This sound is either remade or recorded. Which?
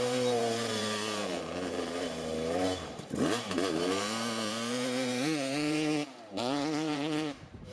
remade